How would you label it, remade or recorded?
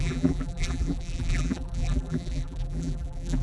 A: remade